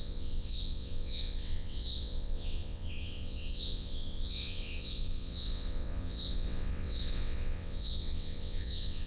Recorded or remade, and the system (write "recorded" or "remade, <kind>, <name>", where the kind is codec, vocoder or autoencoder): remade, vocoder, WaveNeXt